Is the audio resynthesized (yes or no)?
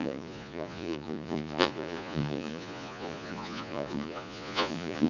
yes